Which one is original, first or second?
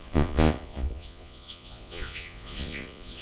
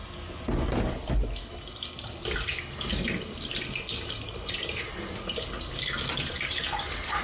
second